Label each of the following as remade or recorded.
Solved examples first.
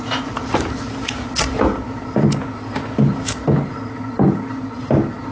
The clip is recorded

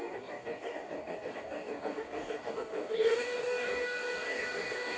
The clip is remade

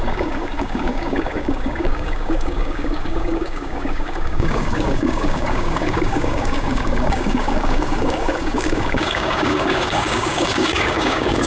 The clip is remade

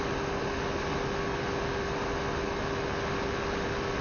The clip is recorded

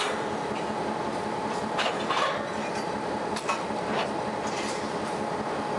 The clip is recorded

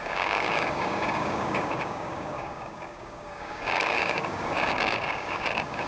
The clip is remade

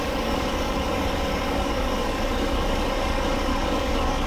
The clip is remade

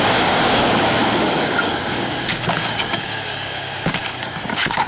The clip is remade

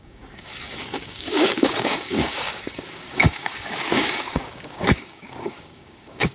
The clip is remade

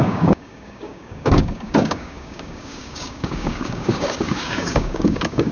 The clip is remade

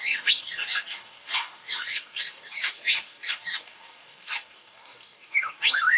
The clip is remade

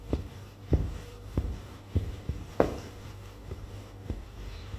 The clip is remade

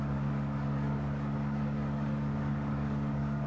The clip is remade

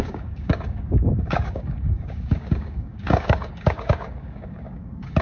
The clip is remade